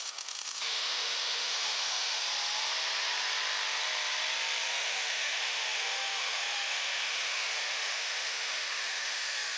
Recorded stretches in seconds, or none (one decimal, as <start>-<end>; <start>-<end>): 2.2-4.7